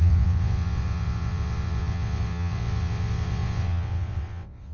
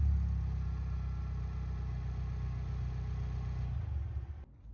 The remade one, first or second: first